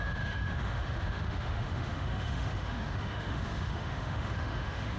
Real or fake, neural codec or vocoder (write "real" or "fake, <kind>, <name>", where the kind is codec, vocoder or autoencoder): fake, autoencoder, DAC-VAE